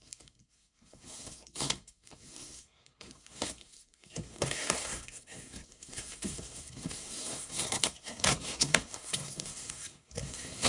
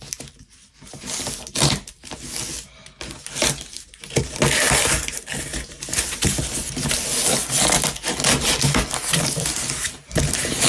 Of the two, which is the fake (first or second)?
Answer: first